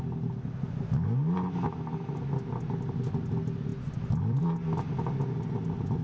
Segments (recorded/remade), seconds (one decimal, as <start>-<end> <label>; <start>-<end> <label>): 0.0-3.7 recorded; 3.7-4.4 remade; 4.4-6.0 recorded